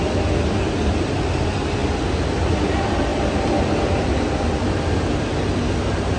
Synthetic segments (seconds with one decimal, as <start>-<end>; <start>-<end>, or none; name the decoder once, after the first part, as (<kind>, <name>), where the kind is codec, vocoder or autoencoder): none